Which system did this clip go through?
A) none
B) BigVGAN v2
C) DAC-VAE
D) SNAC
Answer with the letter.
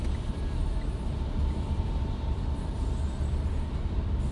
A